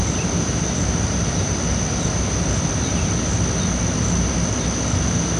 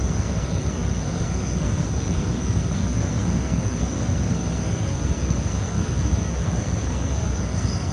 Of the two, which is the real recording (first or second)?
first